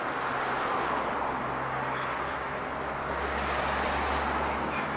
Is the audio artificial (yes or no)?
no